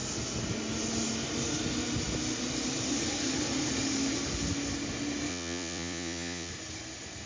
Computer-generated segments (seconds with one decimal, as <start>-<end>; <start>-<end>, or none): 5.3-6.5